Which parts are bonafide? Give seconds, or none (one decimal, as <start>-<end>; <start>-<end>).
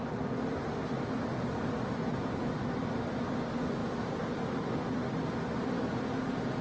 0.0-6.6